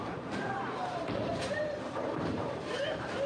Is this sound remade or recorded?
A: remade